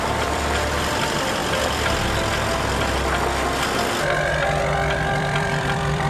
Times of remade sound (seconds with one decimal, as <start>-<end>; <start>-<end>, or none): 0.0-1.4; 5.1-6.1